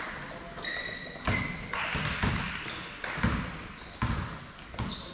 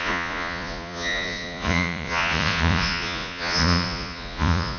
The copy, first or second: second